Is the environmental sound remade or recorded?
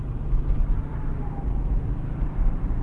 recorded